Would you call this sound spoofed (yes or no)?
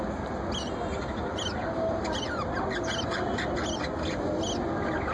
no